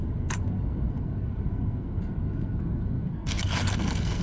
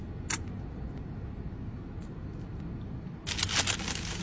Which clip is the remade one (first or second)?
first